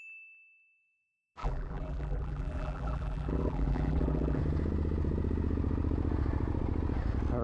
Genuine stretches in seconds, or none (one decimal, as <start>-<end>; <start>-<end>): 0.0-1.4; 4.4-7.4